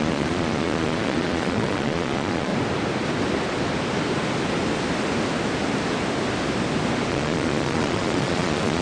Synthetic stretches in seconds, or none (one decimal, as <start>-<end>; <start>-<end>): 0.0-2.5; 7.1-8.8